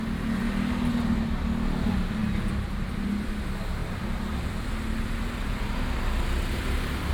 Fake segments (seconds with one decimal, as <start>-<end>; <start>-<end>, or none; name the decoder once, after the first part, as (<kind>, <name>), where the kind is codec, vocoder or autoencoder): 2.2-3.4 (vocoder, BigVGAN v2); 3.8-7.1